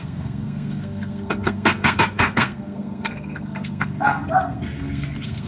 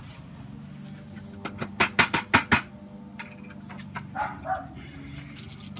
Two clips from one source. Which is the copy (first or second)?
first